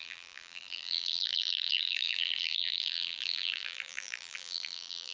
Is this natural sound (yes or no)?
no